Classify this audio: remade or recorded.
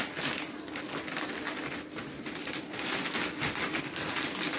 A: recorded